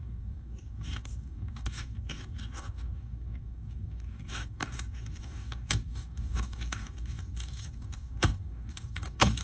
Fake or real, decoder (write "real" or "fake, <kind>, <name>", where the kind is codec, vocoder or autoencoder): fake, codec, DAC